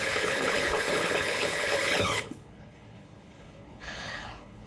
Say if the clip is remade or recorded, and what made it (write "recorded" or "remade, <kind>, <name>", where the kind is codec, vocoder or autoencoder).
remade, codec, HILCodec